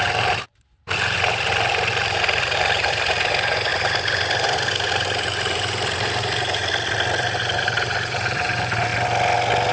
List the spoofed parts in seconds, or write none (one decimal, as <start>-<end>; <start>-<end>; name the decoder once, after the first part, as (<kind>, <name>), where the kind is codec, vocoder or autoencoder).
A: 0.0-6.6 (vocoder, BigVGAN v2); 7.2-8.9